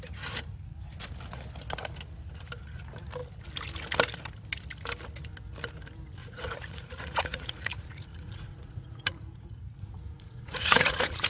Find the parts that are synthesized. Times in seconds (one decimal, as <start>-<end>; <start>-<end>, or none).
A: 6.2-11.3